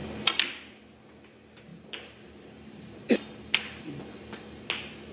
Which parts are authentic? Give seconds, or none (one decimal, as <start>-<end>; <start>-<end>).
0.0-1.7; 4.5-5.1